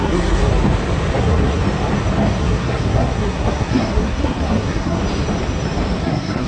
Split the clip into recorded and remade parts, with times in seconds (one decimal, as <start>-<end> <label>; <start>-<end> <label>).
0.0-0.5 remade; 0.5-1.2 recorded; 1.2-1.6 remade; 1.6-2.4 recorded; 2.4-5.0 remade; 5.0-6.0 recorded; 6.0-6.5 remade

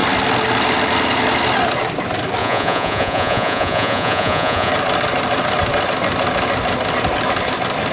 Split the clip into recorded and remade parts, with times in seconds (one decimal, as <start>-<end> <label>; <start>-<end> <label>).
0.0-2.4 recorded; 2.4-4.7 remade; 4.7-7.9 recorded

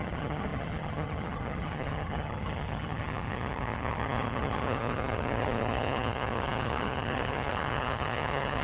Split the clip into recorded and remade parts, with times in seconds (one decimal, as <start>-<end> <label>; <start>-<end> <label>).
0.0-8.6 remade